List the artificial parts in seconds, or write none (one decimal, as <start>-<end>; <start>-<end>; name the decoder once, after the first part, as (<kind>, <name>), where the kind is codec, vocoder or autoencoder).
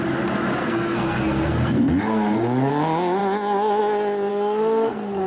0.6-2.7 (codec, SNAC); 4.3-5.3